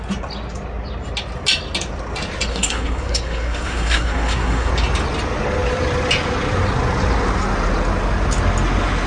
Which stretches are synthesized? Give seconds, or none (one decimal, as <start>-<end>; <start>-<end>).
2.5-4.7